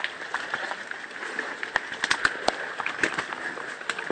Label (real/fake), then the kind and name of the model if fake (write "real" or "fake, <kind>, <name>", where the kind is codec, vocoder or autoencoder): real